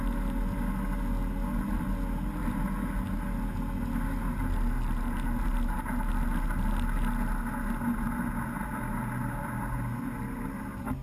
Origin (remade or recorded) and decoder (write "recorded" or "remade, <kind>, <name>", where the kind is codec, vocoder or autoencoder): recorded